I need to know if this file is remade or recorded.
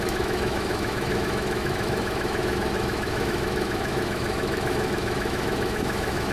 remade